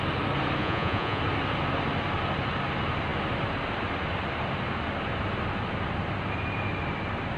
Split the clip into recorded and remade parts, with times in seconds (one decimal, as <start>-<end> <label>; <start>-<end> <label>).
0.0-0.6 recorded; 0.6-1.2 remade; 1.2-7.4 recorded